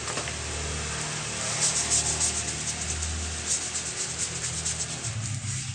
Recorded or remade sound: recorded